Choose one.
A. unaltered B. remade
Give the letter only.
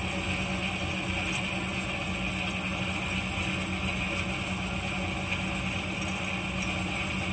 A